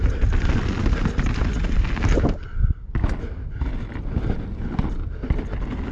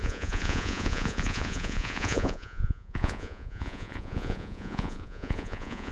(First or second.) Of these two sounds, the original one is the first